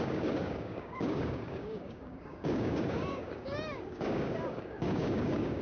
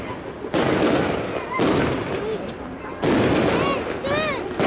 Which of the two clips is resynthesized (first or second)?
first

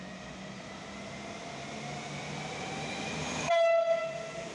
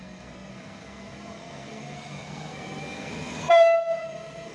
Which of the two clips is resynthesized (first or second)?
second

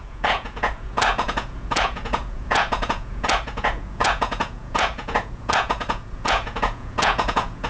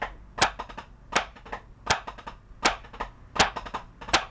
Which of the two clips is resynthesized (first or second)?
first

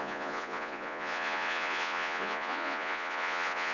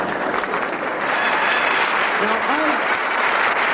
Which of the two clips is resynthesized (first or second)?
first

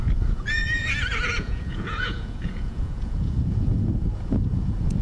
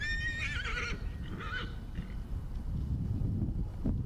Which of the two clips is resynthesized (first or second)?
first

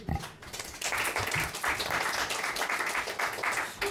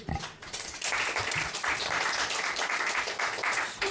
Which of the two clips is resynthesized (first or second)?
second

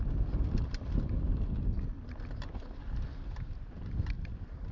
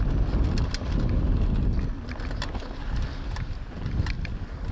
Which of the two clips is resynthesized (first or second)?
first